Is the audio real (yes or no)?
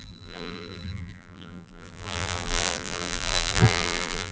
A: no